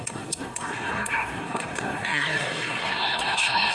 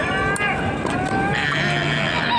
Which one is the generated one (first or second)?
first